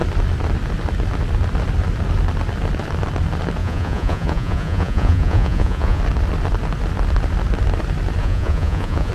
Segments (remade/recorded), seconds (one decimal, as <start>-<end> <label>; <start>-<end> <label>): 0.0-3.6 recorded; 3.6-6.0 remade; 6.0-8.2 recorded; 8.2-9.1 remade

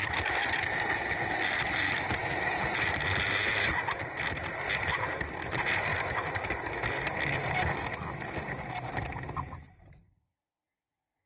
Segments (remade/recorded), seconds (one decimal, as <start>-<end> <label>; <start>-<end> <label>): 0.0-11.3 recorded